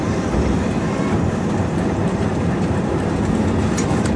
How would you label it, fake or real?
fake